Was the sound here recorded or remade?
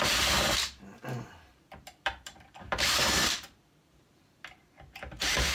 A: remade